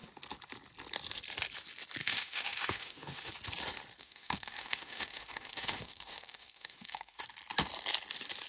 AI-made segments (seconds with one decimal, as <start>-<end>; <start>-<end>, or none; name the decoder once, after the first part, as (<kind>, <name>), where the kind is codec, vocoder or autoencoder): 2.0-3.3 (autoencoder, DAC-VAE); 4.0-7.2